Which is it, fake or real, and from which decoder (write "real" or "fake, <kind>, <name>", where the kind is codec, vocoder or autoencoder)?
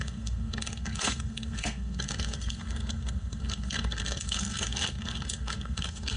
fake, codec, SNAC